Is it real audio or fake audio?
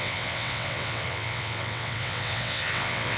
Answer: fake